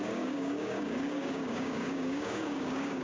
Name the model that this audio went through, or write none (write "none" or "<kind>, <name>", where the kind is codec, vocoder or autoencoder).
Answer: codec, DAC